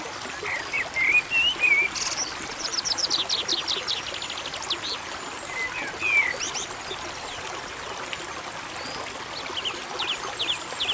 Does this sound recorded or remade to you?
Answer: recorded